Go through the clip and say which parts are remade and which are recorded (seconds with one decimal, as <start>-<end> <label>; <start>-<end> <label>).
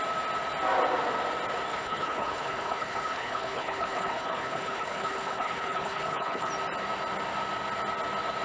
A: 0.0-1.7 recorded; 1.7-6.5 remade; 6.5-8.4 recorded